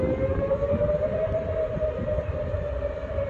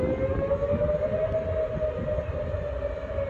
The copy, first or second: first